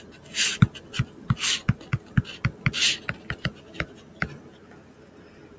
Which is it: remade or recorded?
recorded